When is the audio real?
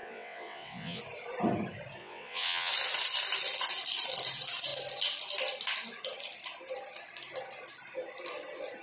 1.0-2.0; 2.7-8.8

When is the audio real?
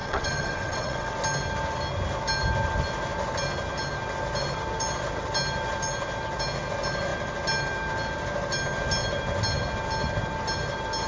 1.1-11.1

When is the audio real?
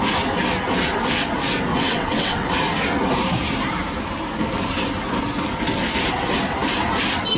0.0-1.7; 2.5-7.4